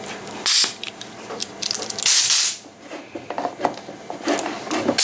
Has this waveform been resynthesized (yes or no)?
no